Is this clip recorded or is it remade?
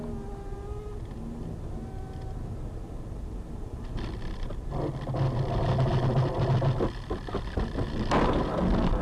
recorded